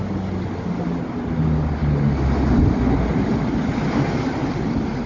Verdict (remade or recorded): recorded